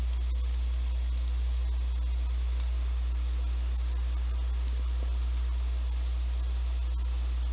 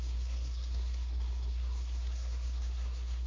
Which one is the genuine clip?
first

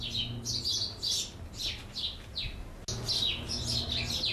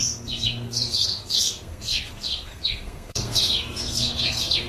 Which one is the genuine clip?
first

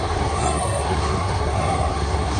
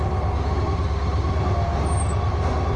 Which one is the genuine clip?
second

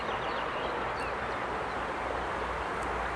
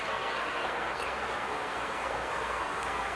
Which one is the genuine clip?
first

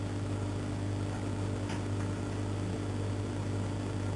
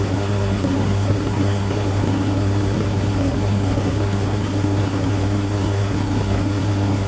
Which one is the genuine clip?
first